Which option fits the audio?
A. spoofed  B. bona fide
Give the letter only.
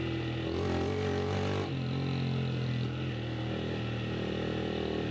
B